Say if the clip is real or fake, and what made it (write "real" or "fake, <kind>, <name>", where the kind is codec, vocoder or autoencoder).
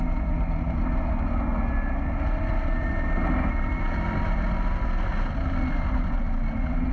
real